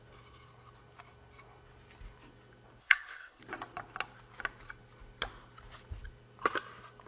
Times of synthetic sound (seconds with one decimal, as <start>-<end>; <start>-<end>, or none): 2.8-3.4